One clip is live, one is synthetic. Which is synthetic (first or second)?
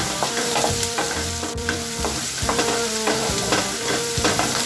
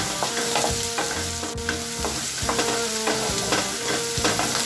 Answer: first